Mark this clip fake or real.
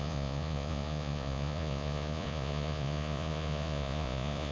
fake